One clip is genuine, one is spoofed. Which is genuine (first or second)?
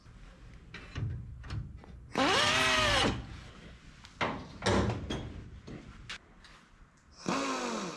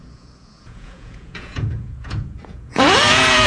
first